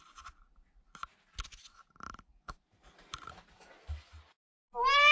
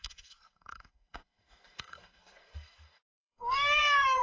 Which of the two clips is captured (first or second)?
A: first